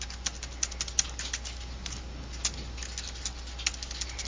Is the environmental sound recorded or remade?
recorded